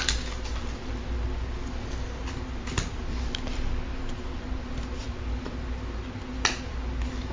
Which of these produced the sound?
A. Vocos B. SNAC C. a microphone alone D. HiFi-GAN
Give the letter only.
C